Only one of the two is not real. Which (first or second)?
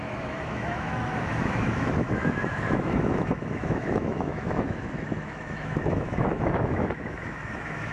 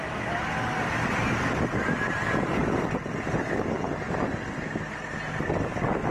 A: first